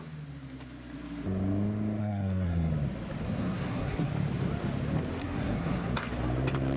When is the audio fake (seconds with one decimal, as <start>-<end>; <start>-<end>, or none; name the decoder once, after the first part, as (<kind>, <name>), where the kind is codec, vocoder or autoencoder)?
2.0-2.7 (codec, SNAC); 3.2-4.1; 5.2-5.9